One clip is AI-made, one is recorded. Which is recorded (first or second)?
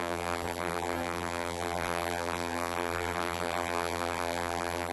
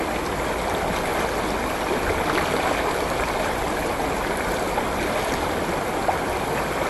second